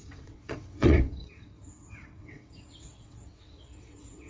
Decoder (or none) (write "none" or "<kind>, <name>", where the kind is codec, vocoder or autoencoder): vocoder, WaveNeXt